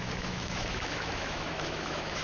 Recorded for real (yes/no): no